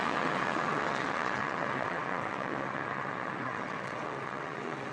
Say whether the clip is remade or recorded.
remade